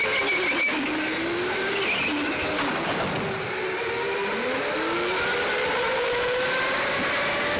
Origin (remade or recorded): recorded